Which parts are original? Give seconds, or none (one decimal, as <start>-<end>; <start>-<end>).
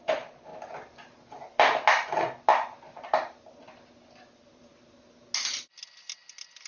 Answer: 0.0-6.7